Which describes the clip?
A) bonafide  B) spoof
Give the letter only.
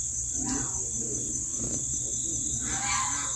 A